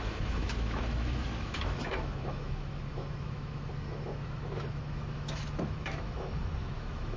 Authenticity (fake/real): fake